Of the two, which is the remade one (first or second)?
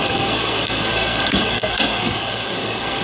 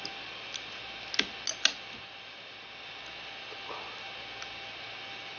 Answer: first